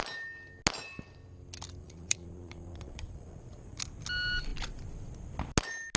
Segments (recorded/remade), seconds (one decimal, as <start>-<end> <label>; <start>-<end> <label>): 0.0-1.8 recorded; 1.8-3.8 remade; 3.8-6.0 recorded